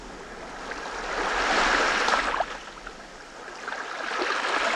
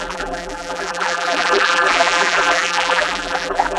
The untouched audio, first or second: first